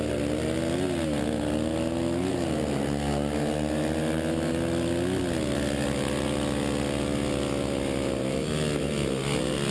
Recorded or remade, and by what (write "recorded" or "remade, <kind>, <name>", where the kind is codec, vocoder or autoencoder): recorded